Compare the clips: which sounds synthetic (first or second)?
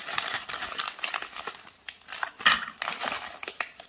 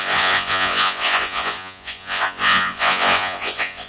second